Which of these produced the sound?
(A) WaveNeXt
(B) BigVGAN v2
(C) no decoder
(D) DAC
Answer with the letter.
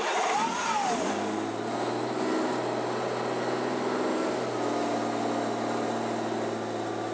C